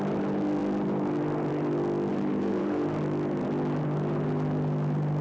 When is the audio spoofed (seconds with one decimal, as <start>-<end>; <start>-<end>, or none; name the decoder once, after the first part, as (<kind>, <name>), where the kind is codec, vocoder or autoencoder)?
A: 2.1-3.0 (vocoder, BigVGAN v2)